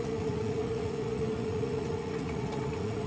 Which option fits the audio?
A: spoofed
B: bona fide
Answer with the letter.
A